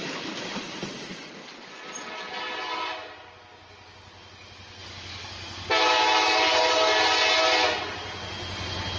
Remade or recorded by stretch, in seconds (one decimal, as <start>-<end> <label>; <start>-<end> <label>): 0.0-4.8 recorded; 4.8-5.7 remade; 5.7-9.0 recorded